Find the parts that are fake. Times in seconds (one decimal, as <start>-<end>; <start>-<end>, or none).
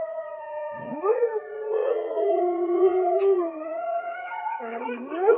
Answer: 0.0-5.4